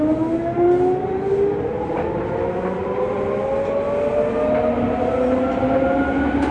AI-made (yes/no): no